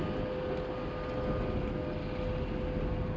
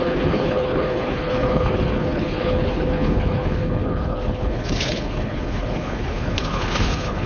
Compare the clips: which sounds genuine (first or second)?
first